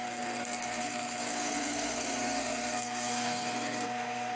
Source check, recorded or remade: remade